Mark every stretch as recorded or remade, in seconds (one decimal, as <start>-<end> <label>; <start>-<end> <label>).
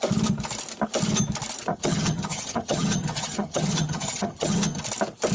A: 0.0-1.7 recorded; 1.7-4.8 remade; 4.8-5.3 recorded